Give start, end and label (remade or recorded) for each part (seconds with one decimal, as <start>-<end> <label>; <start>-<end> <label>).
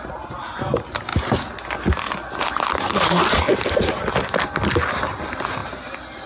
0.0-6.3 recorded